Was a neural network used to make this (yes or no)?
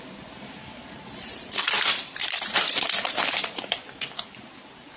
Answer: yes